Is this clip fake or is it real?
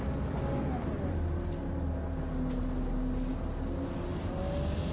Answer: real